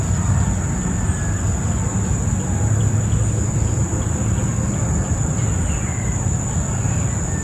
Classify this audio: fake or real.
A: real